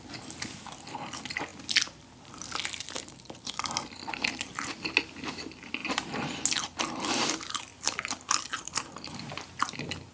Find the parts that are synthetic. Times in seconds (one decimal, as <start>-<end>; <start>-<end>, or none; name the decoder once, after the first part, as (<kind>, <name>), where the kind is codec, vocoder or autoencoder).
5.8-6.3 (vocoder, BigVGAN v2); 7.7-8.7